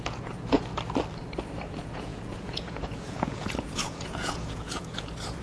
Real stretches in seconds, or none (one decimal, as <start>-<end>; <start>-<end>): 0.7-1.7